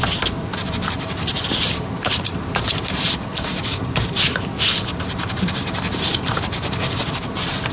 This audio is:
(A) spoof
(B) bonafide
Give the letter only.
B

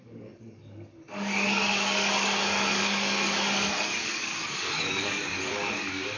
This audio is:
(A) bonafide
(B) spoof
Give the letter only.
B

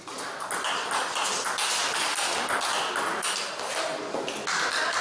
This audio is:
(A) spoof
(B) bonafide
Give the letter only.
B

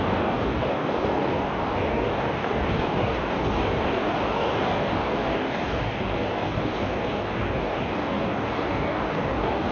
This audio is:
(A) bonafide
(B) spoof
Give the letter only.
B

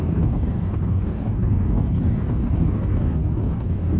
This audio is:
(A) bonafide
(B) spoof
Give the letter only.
B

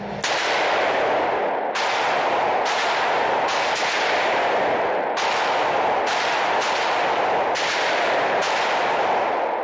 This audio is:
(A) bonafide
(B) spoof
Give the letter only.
A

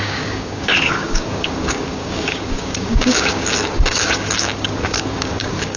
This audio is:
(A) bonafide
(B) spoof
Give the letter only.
B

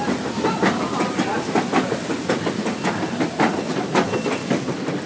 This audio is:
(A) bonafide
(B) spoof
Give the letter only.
A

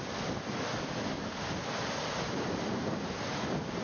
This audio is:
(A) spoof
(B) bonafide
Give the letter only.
B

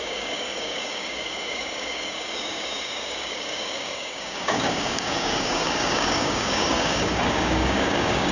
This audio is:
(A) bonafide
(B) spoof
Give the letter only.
B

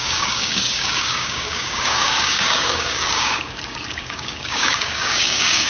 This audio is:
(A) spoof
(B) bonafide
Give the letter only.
A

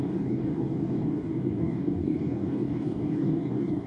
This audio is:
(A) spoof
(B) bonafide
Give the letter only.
A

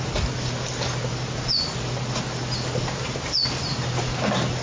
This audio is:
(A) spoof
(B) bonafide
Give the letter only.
B